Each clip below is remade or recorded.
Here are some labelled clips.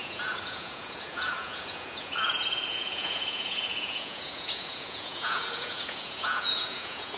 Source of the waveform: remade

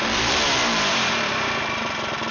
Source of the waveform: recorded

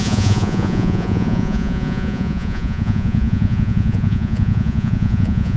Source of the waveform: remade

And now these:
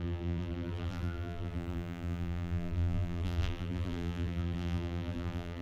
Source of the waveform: remade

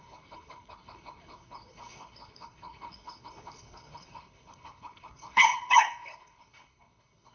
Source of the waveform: remade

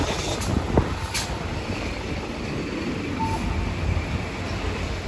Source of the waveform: recorded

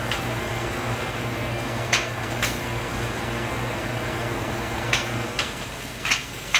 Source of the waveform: remade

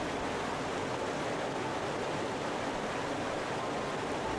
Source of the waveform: recorded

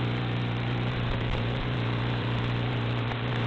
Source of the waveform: remade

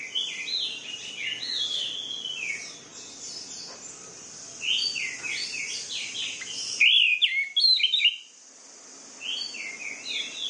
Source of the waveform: recorded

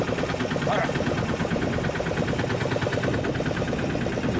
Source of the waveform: recorded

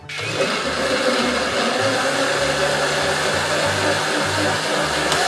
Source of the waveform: recorded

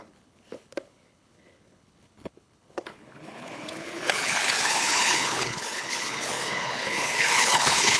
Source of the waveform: remade